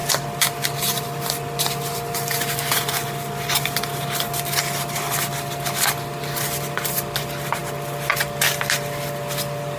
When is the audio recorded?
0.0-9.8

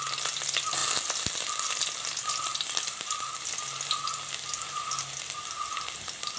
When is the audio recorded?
0.0-6.4

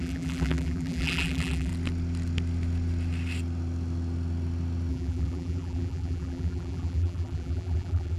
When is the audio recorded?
1.7-4.9

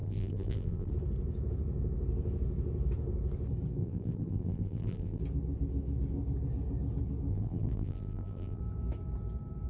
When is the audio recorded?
0.9-3.8; 5.2-7.3; 8.6-9.7

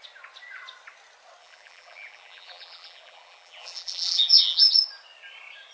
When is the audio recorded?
0.0-1.4; 4.7-5.7